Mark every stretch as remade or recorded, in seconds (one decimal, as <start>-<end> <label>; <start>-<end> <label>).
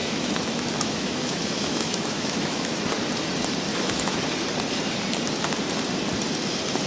0.0-2.8 remade; 2.8-3.7 recorded; 3.7-4.2 remade; 4.2-6.9 recorded